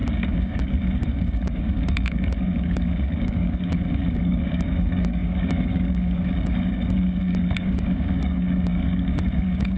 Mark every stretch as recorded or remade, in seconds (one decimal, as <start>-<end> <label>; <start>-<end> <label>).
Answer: 0.0-9.8 remade